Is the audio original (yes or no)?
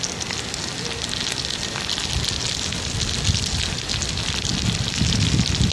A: yes